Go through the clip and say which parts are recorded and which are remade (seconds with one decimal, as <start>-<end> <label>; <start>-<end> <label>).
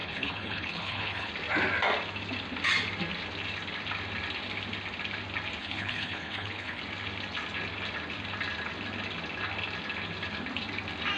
0.0-1.3 remade; 1.3-5.6 recorded; 5.6-6.8 remade; 6.8-11.2 recorded